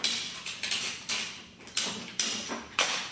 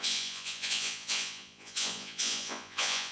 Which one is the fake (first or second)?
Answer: second